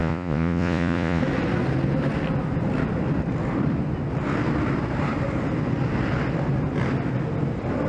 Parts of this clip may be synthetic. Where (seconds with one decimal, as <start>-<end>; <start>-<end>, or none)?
0.0-1.2